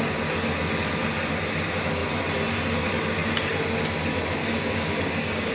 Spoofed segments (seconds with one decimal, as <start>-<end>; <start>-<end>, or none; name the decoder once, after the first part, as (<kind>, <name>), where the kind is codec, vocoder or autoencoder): 4.4-5.5 (codec, DAC)